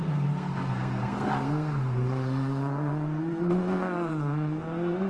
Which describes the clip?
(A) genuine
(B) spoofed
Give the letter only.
B